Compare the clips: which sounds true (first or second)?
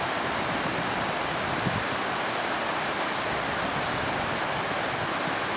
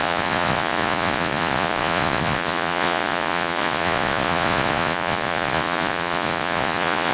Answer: first